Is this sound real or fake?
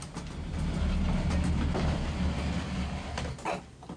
real